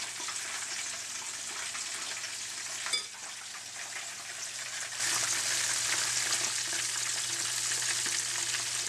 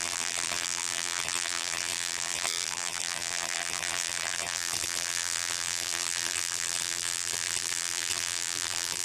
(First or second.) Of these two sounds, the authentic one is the first